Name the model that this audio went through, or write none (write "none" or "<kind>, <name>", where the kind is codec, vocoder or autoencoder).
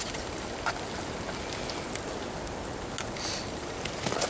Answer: none